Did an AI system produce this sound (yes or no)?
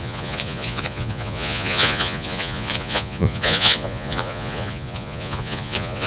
yes